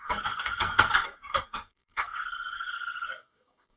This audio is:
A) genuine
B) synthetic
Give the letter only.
B